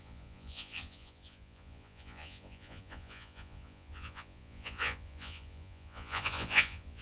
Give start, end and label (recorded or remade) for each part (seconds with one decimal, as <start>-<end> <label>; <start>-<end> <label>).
0.0-7.0 remade